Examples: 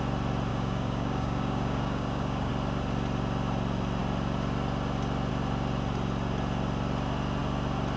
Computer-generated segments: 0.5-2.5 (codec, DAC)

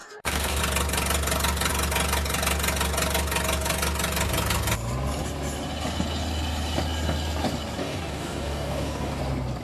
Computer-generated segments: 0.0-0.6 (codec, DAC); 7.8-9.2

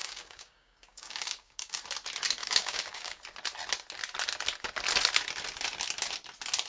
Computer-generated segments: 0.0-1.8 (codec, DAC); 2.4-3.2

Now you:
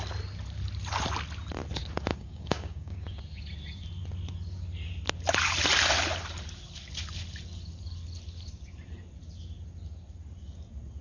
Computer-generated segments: 2.1-3.2 (codec, DAC)

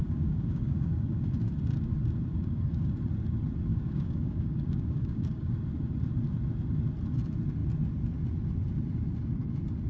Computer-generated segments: 0.0-1.5 (codec, DAC); 2.3-2.9; 3.7-5.5

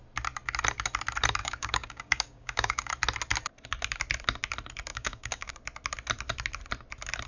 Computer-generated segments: 1.4-2.9 (codec, DAC); 4.9-5.5

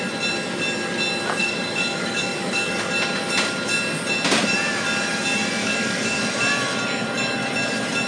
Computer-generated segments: 1.4-2.9 (codec, DAC); 5.6-6.2

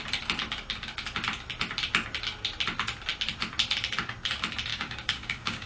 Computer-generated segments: 4.7-5.7 (codec, DAC)